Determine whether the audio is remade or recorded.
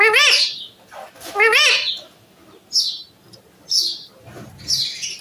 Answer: recorded